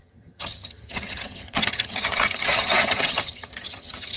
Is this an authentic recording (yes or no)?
no